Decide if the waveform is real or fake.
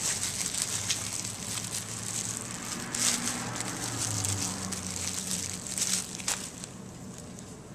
real